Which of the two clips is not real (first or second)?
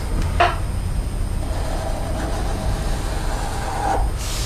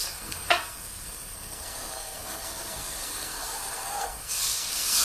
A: second